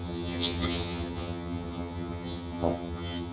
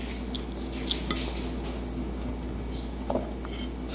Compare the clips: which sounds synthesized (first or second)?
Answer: first